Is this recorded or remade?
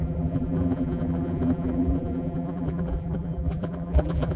remade